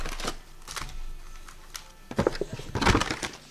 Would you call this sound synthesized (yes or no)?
no